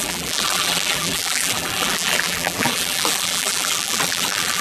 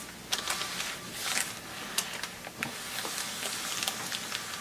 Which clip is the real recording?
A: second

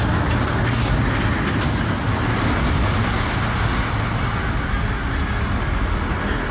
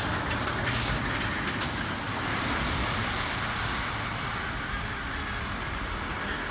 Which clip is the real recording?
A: first